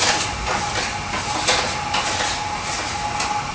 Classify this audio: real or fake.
real